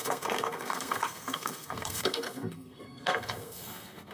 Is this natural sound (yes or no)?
no